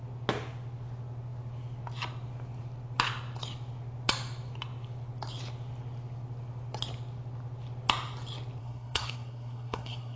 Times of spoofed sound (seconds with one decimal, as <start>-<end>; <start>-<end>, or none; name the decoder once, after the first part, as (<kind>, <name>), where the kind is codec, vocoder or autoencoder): 8.6-10.2 (codec, SNAC)